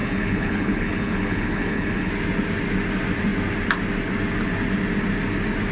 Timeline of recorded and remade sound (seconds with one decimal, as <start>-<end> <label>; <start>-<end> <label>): 0.0-2.1 remade; 2.1-5.7 recorded